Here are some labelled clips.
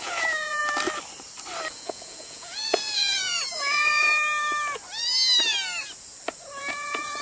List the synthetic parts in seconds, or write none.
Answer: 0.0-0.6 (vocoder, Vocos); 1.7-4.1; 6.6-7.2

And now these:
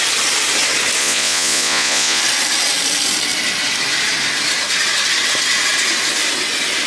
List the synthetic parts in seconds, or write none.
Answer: 1.0-2.2 (vocoder, Vocos)

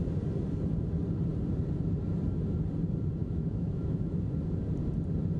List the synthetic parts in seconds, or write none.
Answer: 3.2-4.2 (autoencoder, DAC-VAE)

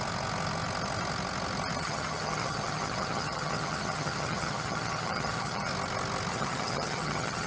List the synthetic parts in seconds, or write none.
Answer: 1.8-5.7 (vocoder, HiFi-GAN); 6.3-7.5

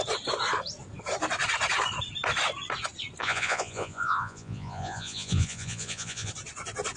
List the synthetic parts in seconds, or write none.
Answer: 3.2-6.3 (vocoder, Vocos)

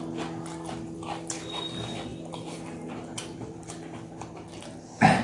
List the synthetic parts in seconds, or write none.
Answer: none

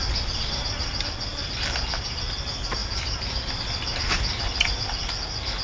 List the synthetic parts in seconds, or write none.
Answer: none